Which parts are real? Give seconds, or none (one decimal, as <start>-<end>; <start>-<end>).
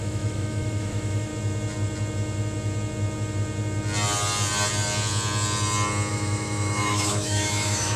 1.3-6.1